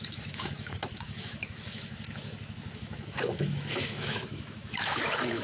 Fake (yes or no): yes